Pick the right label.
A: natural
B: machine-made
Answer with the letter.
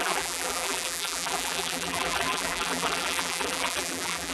B